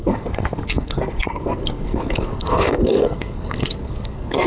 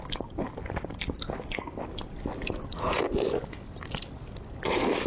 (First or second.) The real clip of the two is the second